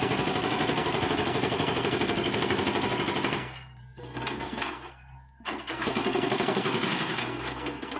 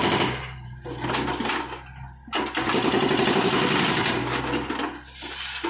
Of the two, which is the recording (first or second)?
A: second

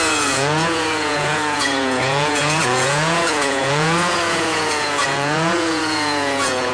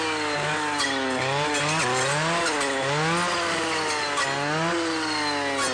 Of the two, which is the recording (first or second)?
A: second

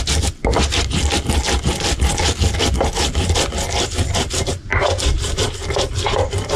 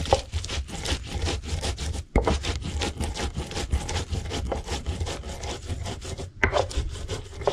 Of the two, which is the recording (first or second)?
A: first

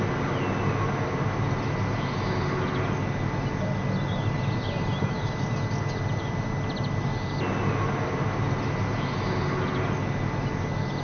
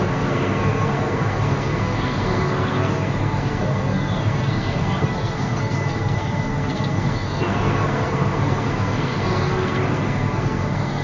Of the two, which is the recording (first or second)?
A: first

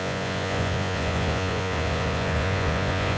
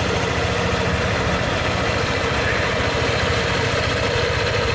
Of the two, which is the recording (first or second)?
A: second